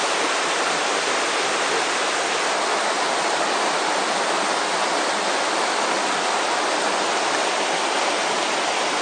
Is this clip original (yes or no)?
yes